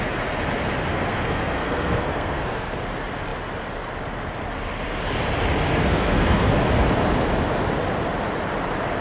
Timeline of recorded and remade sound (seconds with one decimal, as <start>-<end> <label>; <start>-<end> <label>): 0.0-0.9 recorded; 0.9-2.8 remade; 2.8-5.7 recorded; 5.7-6.5 remade; 6.5-9.0 recorded